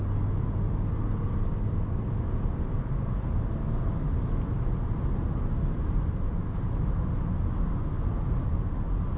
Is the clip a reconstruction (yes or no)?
no